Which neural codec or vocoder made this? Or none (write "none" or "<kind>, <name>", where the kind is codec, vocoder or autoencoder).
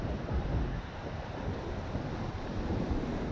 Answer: none